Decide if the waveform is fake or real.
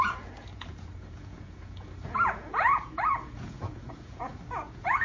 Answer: fake